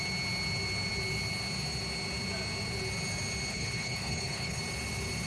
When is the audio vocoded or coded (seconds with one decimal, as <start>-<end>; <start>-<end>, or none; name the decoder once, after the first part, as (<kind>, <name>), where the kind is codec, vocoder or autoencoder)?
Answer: 3.5-4.6 (codec, HILCodec)